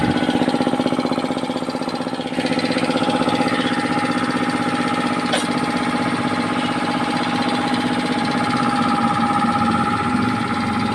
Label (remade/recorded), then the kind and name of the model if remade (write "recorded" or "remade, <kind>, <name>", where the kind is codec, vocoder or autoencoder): recorded